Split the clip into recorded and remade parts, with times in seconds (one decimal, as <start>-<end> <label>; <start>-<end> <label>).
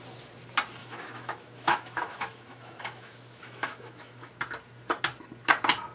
0.0-0.8 recorded; 0.8-4.3 remade; 4.3-5.9 recorded